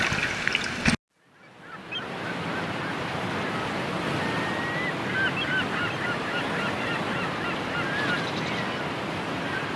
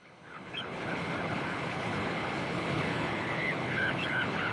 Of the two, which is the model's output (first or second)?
second